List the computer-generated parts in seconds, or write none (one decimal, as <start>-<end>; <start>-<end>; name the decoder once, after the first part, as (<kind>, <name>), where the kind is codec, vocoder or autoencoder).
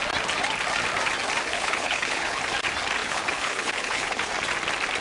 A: 1.5-2.4 (codec, HILCodec); 3.0-4.3